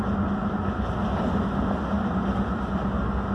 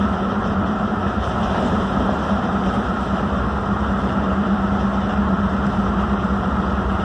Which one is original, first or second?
first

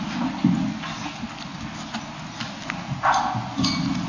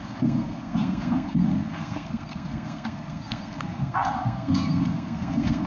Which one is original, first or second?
first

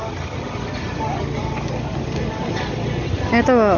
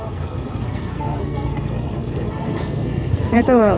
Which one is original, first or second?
first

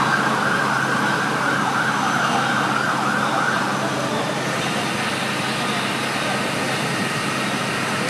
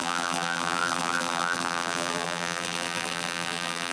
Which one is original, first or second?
first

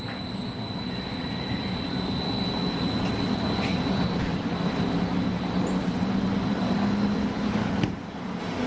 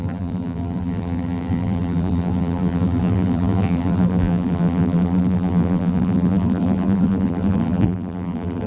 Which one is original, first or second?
first